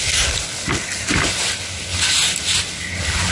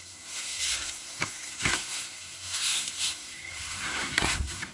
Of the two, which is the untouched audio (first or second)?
first